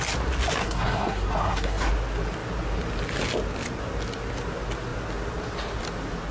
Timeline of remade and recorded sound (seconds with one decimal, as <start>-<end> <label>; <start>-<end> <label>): 0.0-0.6 recorded; 0.6-1.9 remade; 1.9-6.3 recorded